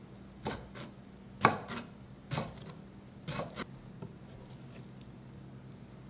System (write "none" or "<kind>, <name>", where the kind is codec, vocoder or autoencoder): none